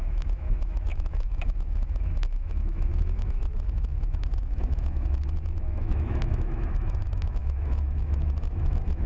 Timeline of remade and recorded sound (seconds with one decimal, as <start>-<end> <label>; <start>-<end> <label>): 0.0-9.1 remade